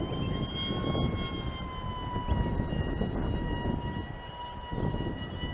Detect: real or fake real